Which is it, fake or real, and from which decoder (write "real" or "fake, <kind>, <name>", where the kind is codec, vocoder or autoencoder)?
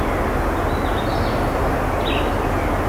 real